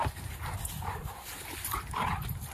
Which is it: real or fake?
fake